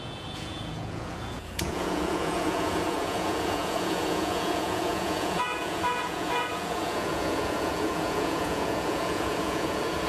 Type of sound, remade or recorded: remade